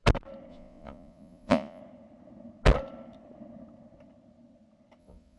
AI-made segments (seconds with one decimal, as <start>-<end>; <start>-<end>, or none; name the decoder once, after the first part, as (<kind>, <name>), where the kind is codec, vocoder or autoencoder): 0.5-1.8 (vocoder, Vocos); 5.0-5.4